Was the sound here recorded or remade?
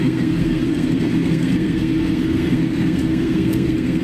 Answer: remade